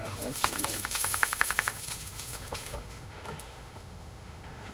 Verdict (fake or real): fake